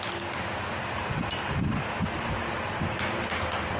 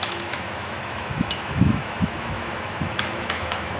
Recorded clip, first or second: first